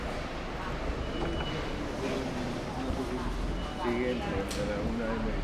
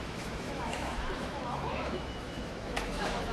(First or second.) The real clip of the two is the first